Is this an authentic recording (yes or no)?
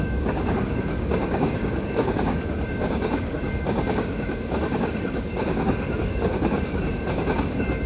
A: no